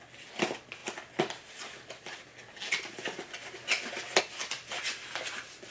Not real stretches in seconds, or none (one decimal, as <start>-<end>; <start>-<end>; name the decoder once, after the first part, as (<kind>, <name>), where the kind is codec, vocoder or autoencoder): none